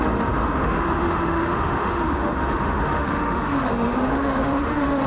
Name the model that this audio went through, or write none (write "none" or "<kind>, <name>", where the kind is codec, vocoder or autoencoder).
autoencoder, DAC-VAE